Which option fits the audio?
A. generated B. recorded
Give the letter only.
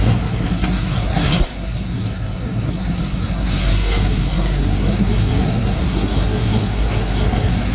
A